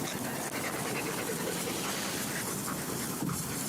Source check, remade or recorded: recorded